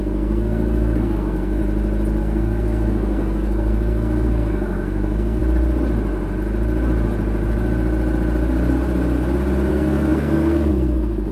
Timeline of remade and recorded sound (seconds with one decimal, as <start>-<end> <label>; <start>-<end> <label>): 0.0-1.6 remade; 1.6-2.2 recorded; 2.2-5.4 remade; 5.4-9.7 recorded; 9.7-11.3 remade